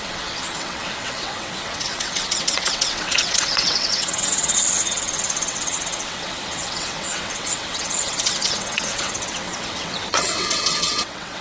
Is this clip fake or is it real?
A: fake